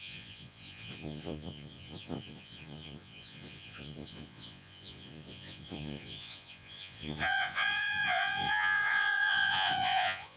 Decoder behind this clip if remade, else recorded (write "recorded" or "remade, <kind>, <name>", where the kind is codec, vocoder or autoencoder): remade, vocoder, Vocos